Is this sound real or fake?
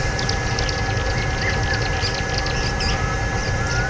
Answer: real